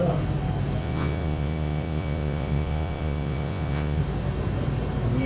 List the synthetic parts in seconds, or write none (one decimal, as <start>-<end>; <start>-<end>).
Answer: 0.8-4.0